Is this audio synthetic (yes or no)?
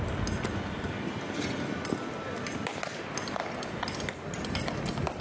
no